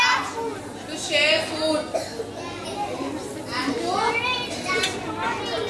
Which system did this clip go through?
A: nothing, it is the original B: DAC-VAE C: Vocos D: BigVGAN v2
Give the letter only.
A